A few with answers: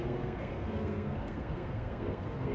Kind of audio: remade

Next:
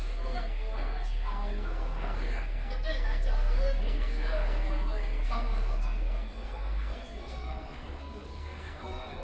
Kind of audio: remade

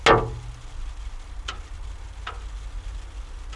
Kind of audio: recorded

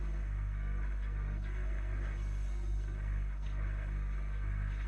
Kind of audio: remade